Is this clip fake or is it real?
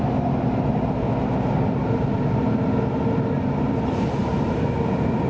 real